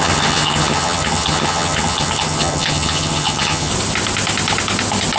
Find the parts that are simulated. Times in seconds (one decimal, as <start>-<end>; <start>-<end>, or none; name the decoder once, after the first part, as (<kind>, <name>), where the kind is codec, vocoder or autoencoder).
0.0-3.7 (vocoder, HiFi-GAN)